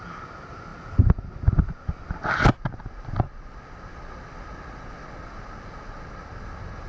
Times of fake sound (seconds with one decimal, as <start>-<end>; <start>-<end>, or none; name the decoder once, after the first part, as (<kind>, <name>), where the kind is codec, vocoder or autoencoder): none